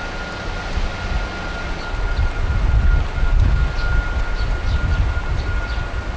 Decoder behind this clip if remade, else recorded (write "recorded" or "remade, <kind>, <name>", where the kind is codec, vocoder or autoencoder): recorded